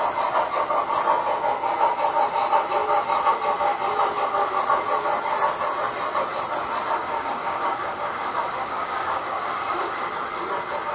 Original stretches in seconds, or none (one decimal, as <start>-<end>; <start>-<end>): 0.0-7.0; 10.1-10.9